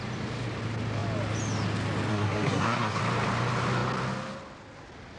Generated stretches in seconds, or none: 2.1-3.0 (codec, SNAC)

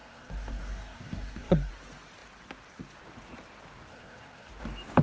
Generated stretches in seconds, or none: 0.0-1.7 (codec, SNAC); 3.9-4.5

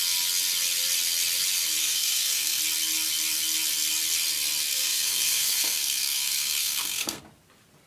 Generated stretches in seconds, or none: 1.8-2.6 (codec, SNAC); 4.7-7.2

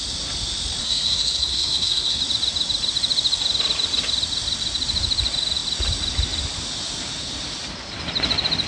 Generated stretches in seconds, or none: 0.8-2.2 (codec, SNAC)

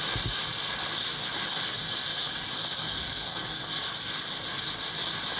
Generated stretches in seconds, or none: 2.8-3.6 (codec, SNAC)

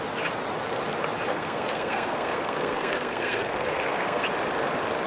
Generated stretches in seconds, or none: 1.3-4.2 (codec, SNAC)

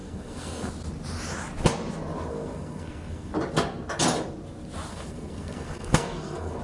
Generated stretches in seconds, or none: 0.0-0.7 (codec, SNAC); 2.3-3.3; 4.9-6.6